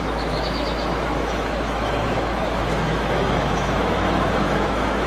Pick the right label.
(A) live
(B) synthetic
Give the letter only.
B